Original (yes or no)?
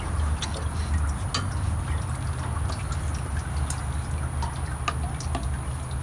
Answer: yes